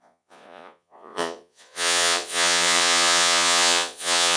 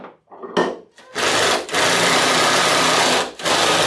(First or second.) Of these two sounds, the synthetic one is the first